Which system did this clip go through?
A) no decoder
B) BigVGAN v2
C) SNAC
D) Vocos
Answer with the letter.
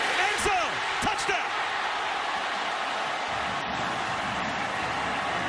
A